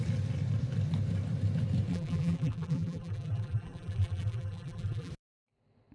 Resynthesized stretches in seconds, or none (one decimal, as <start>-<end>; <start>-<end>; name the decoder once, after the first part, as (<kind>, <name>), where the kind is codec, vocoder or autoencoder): 1.9-5.1 (vocoder, BigVGAN v2)